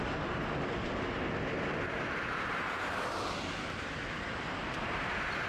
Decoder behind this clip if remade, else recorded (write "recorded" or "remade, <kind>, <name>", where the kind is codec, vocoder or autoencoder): remade, vocoder, BigVGAN v2